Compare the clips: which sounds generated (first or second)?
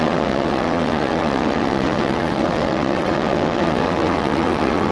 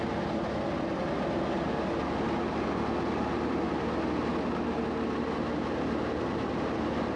first